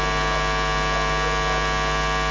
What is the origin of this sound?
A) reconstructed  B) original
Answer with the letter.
B